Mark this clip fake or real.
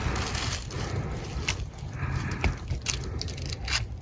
real